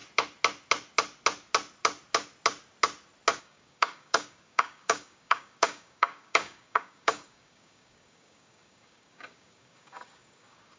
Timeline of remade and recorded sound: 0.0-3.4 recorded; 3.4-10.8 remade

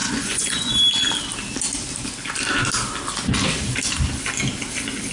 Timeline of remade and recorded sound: 0.0-0.7 remade; 0.7-5.1 recorded

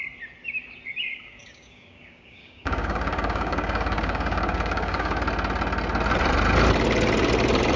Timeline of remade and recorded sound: 0.0-1.0 recorded; 1.0-5.2 remade; 5.2-7.8 recorded

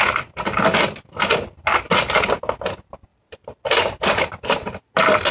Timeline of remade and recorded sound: 0.0-5.3 recorded

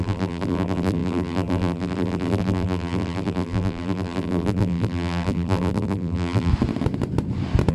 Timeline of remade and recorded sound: 0.0-6.5 remade; 6.5-7.7 recorded